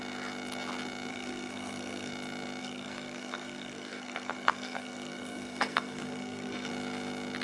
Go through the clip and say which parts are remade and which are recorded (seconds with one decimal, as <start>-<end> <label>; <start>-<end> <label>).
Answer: 0.0-1.1 recorded; 1.1-2.1 remade; 2.1-2.6 recorded; 2.6-6.7 remade; 6.7-7.4 recorded